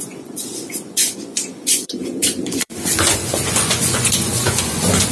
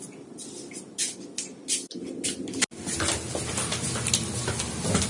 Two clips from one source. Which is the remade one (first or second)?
first